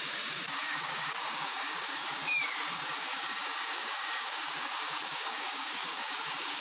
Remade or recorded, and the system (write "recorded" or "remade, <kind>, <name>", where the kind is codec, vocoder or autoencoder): remade, codec, DAC